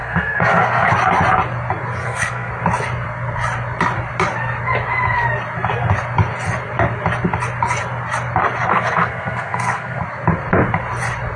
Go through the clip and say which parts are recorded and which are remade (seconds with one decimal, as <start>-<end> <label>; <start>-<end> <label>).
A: 0.0-0.9 remade; 0.9-2.0 recorded; 2.0-2.5 remade; 2.5-8.7 recorded; 8.7-10.0 remade; 10.0-11.4 recorded